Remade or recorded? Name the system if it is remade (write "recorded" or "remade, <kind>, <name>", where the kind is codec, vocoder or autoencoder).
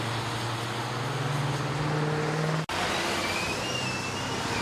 recorded